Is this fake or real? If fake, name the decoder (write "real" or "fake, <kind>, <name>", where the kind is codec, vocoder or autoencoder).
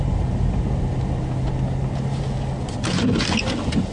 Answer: real